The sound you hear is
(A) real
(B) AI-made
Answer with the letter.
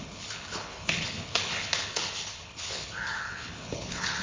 B